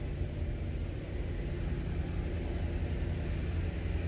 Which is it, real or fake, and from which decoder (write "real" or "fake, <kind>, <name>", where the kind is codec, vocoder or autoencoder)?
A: real